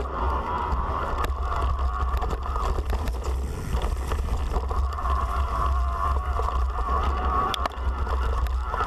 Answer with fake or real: real